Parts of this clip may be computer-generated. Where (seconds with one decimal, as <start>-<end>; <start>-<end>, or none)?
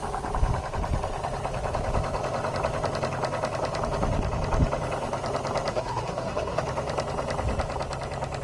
5.7-6.6